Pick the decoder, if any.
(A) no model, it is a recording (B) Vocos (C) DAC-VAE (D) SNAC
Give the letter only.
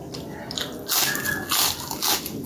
A